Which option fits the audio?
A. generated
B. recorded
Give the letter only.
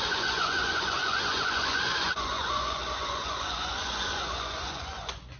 A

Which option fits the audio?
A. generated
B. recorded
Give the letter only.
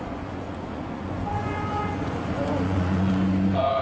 A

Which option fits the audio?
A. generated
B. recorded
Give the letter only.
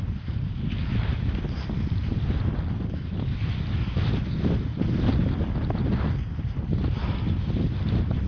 B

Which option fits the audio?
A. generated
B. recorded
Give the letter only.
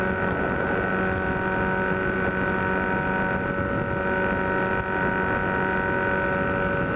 B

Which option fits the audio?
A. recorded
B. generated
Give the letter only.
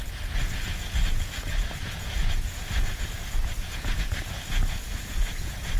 B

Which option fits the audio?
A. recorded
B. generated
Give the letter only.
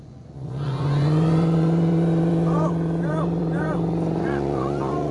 B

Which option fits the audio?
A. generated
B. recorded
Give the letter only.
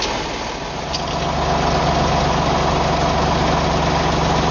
B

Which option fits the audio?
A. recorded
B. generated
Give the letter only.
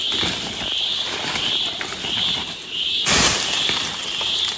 A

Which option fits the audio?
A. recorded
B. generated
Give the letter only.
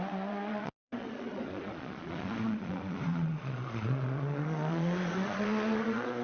B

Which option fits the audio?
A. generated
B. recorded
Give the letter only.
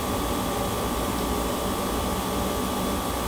B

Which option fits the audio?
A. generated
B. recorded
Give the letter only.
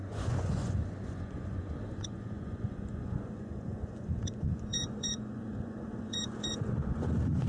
A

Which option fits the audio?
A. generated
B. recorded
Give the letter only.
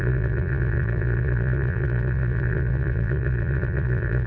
A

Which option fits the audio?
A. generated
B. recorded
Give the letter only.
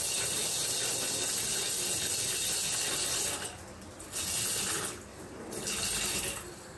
B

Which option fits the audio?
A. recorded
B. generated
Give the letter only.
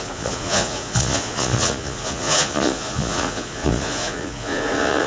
B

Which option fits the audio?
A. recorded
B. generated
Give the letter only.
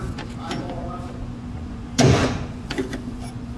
B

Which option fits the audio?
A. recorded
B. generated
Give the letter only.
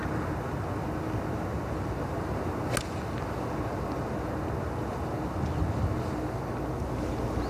A